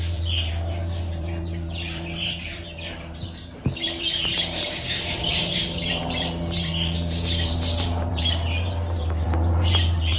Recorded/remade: remade